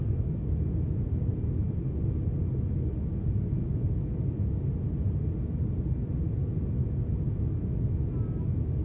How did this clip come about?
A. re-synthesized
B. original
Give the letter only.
B